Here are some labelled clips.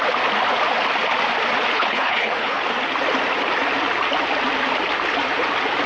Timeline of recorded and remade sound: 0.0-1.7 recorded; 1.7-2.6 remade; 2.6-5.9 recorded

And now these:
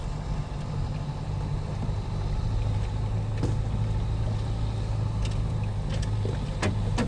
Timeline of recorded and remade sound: 0.0-7.1 recorded

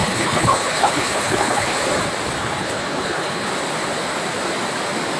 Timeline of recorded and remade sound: 0.0-1.9 remade; 1.9-2.4 recorded; 2.4-3.5 remade; 3.5-5.2 recorded

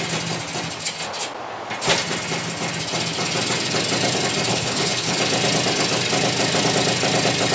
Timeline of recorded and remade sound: 0.0-4.5 recorded; 4.5-5.2 remade; 5.2-7.5 recorded

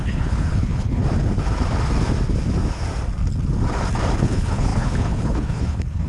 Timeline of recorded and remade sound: 0.0-1.0 remade; 1.0-4.2 recorded; 4.2-6.1 remade

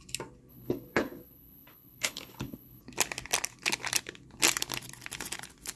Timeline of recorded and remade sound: 0.0-0.5 recorded; 0.5-2.8 remade; 2.8-5.8 recorded

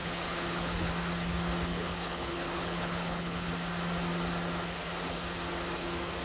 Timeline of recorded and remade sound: 0.0-0.9 remade; 0.9-1.7 recorded; 1.7-3.5 remade; 3.5-6.2 recorded

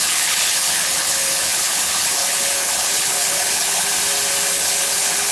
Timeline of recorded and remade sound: 0.0-3.9 remade; 3.9-4.5 recorded; 4.5-5.3 remade